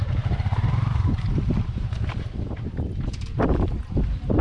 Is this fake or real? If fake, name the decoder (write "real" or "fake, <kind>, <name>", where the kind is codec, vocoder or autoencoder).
fake, vocoder, BigVGAN v2